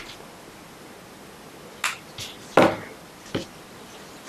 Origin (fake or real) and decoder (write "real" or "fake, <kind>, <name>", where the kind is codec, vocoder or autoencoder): real